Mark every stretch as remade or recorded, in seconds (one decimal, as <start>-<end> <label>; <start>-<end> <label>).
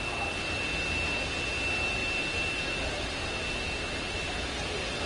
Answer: 0.0-5.1 recorded